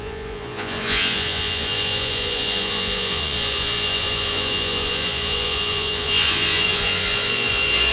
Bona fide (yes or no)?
no